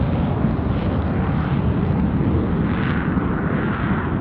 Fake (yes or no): no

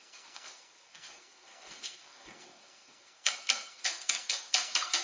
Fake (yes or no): yes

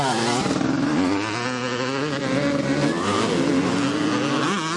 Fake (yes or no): no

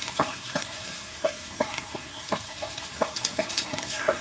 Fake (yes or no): yes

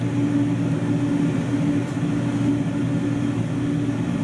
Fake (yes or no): no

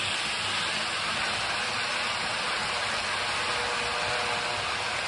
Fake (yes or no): no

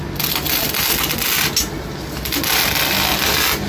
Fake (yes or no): no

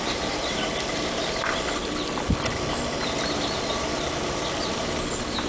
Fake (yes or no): no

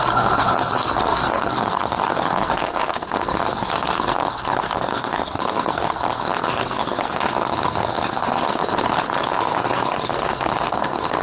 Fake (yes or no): yes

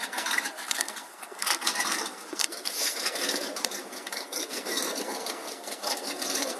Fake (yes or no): yes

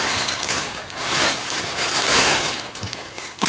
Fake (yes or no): yes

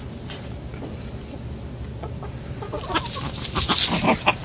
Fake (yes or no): no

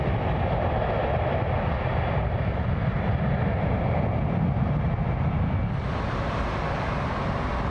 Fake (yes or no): no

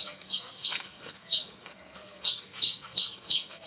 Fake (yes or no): yes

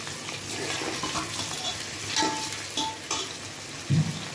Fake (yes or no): no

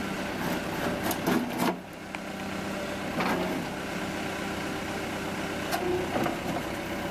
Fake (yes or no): no